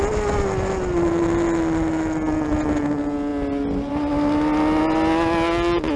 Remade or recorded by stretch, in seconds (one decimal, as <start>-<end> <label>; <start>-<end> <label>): 0.0-6.0 recorded

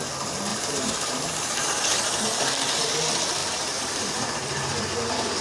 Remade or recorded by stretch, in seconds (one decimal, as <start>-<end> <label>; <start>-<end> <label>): 0.0-0.5 recorded; 0.5-2.2 remade; 2.2-3.4 recorded; 3.4-4.9 remade; 4.9-5.4 recorded

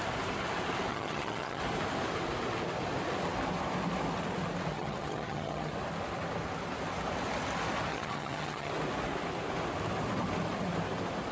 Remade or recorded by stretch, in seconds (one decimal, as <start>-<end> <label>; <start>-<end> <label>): 0.0-0.9 recorded; 0.9-1.6 remade; 1.6-4.7 recorded; 4.7-5.7 remade; 5.7-7.9 recorded; 7.9-8.7 remade; 8.7-11.3 recorded

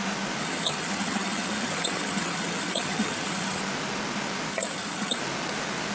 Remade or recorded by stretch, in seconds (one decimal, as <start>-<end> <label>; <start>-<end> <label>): 0.0-0.4 recorded; 0.4-3.6 remade; 3.6-4.5 recorded; 4.5-5.2 remade; 5.2-5.9 recorded

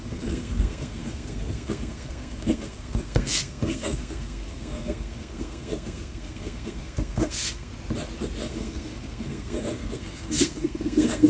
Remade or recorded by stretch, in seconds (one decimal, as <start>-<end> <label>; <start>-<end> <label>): 0.0-7.7 remade; 7.7-8.4 recorded; 8.4-11.3 remade

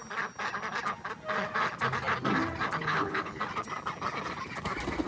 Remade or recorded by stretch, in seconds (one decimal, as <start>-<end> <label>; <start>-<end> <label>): 0.0-2.8 recorded; 2.8-3.4 remade; 3.4-5.1 recorded

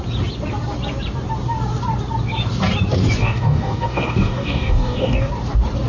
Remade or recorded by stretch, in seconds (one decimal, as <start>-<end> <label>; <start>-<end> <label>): 0.0-3.2 recorded; 3.2-5.3 remade; 5.3-5.9 recorded